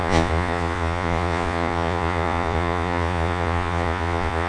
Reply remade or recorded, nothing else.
remade